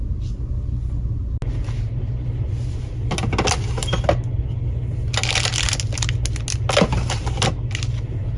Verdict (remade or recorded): recorded